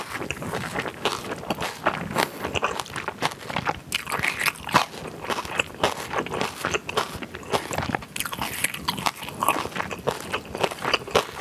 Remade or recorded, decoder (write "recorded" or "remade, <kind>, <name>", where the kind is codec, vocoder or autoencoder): recorded